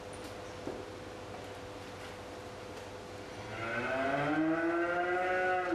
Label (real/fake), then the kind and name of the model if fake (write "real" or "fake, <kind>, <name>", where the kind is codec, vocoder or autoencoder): real